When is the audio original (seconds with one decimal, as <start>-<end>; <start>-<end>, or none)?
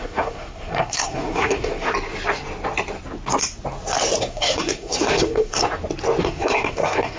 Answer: 1.9-4.2; 5.6-6.2